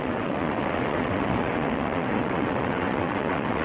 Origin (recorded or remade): remade